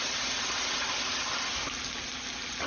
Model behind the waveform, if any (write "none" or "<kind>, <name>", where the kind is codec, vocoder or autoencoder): none